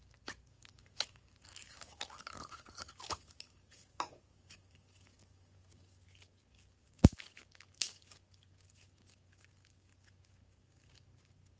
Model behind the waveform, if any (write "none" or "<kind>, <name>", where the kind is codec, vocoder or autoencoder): codec, DAC